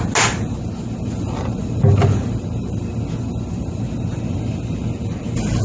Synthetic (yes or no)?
no